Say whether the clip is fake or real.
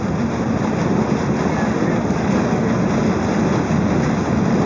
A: real